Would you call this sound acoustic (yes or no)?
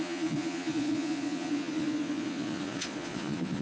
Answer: no